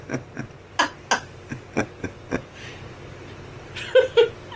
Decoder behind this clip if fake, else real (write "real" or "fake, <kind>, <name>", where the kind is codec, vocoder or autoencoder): real